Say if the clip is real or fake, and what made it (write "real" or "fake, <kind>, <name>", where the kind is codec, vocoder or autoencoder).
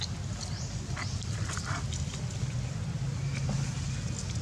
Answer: real